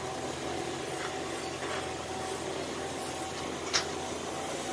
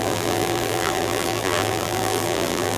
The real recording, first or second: first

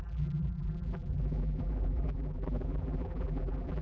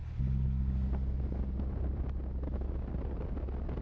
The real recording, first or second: second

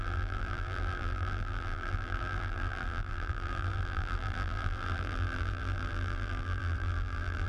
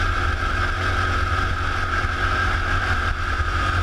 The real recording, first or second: second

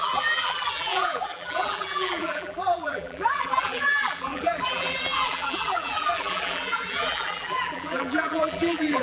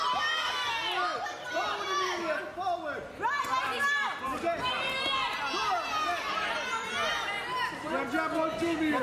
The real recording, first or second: second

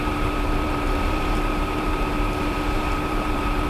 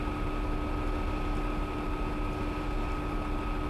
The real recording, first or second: second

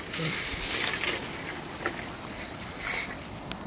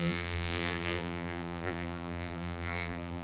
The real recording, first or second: first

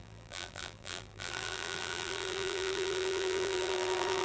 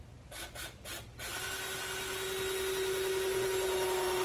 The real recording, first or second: second